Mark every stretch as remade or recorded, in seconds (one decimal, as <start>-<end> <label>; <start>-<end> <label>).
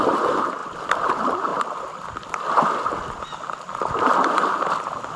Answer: 0.0-5.2 remade